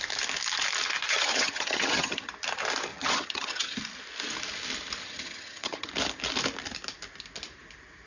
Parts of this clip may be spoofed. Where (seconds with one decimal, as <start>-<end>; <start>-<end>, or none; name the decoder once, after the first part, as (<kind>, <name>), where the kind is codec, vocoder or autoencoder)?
1.1-2.3 (vocoder, HiFi-GAN); 2.9-3.8; 5.0-5.9